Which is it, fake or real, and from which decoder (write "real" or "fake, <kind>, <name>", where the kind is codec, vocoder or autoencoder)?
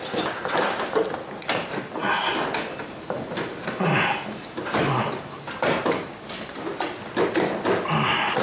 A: real